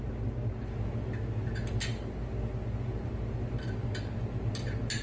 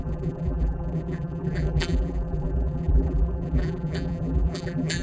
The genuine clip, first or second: first